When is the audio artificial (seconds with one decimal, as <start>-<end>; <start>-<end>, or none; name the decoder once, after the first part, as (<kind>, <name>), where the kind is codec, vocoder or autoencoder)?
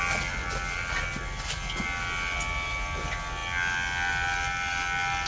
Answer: none